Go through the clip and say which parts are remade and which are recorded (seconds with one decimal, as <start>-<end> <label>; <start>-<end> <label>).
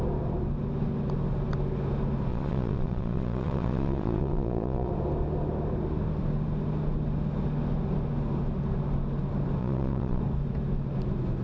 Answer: 0.0-2.3 recorded; 2.3-4.9 remade; 4.9-9.6 recorded; 9.6-10.2 remade; 10.2-11.4 recorded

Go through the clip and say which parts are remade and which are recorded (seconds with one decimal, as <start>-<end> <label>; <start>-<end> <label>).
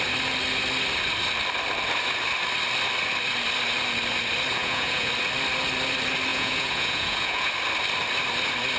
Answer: 0.0-4.6 recorded; 4.6-5.1 remade; 5.1-6.3 recorded; 6.3-7.5 remade; 7.5-8.8 recorded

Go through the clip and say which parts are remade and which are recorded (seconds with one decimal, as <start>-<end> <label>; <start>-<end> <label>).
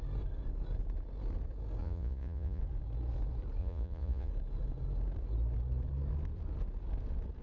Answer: 0.0-1.8 recorded; 1.8-2.6 remade; 2.6-3.6 recorded; 3.6-4.3 remade; 4.3-7.4 recorded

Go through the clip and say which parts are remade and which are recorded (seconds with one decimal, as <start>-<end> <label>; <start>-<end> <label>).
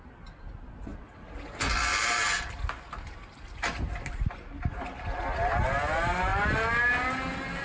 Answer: 0.0-7.6 recorded